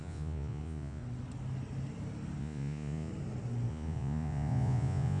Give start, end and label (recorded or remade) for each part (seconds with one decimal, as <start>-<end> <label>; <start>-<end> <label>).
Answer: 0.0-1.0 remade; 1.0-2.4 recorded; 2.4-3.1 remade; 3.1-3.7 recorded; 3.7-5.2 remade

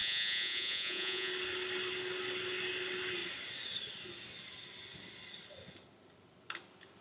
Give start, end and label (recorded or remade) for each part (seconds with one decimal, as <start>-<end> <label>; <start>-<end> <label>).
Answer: 0.0-1.3 remade; 1.3-7.0 recorded

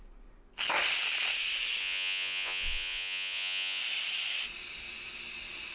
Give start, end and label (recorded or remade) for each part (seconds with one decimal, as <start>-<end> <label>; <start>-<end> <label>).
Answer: 0.0-1.8 recorded; 1.8-3.8 remade; 3.8-5.7 recorded

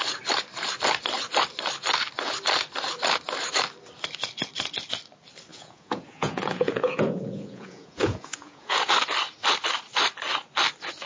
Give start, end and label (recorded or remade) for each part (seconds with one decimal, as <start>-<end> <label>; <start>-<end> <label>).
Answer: 0.0-5.5 recorded; 5.5-8.9 remade; 8.9-11.1 recorded

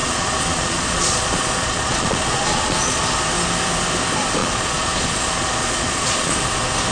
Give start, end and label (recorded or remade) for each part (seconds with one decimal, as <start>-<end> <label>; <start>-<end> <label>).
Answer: 0.0-3.0 remade; 3.0-4.4 recorded; 4.4-6.3 remade; 6.3-6.9 recorded

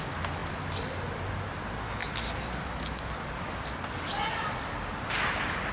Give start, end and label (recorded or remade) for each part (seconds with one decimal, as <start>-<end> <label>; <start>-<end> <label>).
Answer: 0.0-5.7 recorded

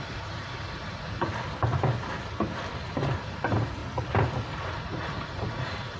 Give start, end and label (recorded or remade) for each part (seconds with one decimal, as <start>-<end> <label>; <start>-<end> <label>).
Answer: 0.0-1.3 remade; 1.3-3.2 recorded; 3.2-3.8 remade; 3.8-4.7 recorded; 4.7-6.0 remade

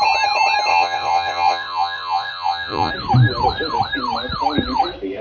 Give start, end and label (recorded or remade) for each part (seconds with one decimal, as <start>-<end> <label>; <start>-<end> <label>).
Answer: 0.0-0.7 recorded; 0.7-2.9 remade; 2.9-5.2 recorded